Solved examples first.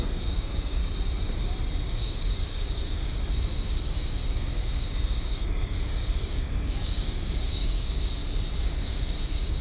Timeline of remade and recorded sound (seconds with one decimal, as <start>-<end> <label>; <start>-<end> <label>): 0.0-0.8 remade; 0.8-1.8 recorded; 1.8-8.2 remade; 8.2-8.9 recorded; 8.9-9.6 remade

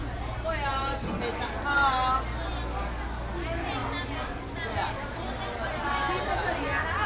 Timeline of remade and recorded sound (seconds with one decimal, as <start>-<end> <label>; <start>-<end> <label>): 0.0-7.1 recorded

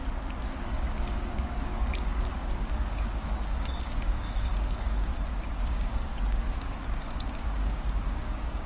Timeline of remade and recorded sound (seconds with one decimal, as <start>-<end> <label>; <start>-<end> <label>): 0.0-1.1 recorded; 1.1-5.1 remade; 5.1-5.6 recorded; 5.6-8.7 remade

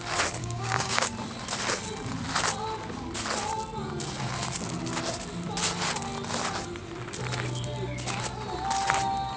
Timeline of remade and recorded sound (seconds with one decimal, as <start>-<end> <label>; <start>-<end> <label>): 0.0-0.4 recorded; 0.4-1.1 remade; 1.1-9.4 recorded